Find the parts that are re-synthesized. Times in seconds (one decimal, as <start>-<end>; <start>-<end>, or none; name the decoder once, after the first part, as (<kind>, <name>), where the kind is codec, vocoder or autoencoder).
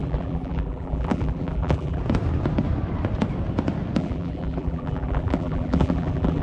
0.0-2.0 (vocoder, BigVGAN v2); 4.0-6.4